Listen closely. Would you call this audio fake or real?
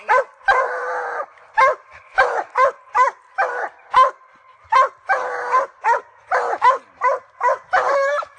fake